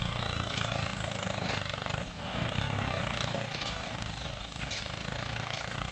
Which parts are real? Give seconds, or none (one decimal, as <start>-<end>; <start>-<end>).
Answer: none